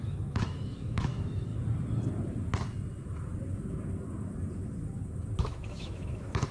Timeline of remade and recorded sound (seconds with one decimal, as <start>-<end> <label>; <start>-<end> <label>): 0.0-1.5 remade; 1.5-5.4 recorded; 5.4-6.5 remade